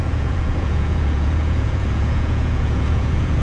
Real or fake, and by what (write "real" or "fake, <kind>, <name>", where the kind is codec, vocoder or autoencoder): fake, vocoder, Vocos